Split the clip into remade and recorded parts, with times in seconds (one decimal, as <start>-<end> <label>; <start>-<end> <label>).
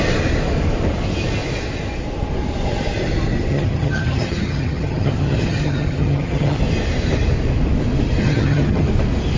0.0-3.5 recorded; 3.5-6.6 remade; 6.6-8.2 recorded; 8.2-8.9 remade; 8.9-9.4 recorded